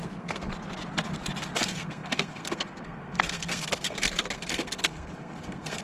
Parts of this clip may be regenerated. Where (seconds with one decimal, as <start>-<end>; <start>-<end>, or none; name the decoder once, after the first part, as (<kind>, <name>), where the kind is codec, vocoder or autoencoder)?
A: 0.0-0.5 (codec, SNAC); 1.6-5.8